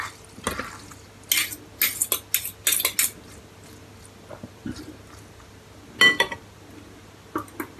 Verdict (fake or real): real